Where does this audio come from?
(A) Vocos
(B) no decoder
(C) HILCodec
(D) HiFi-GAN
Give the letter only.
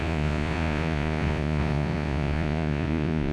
A